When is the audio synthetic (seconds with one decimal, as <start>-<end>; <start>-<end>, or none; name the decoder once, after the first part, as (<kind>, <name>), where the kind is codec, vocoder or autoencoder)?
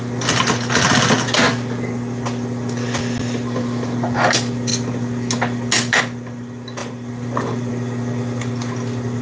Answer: none